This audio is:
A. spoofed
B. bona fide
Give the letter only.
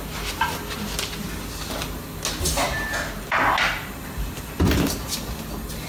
B